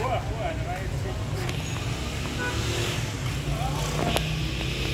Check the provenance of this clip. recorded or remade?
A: recorded